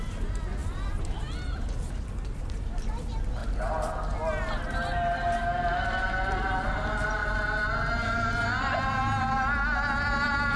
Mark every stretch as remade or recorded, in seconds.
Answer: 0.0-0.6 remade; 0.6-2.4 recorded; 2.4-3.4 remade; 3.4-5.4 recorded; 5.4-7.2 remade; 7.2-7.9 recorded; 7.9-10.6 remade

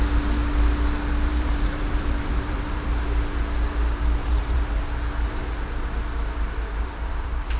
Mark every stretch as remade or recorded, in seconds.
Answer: 0.0-1.3 recorded; 1.3-2.8 remade; 2.8-4.2 recorded; 4.2-4.8 remade; 4.8-7.6 recorded